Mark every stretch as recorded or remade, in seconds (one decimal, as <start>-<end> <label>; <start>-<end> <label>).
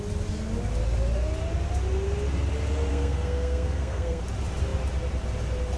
0.0-2.9 recorded; 2.9-4.2 remade; 4.2-5.8 recorded